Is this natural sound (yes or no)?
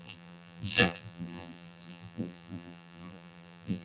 no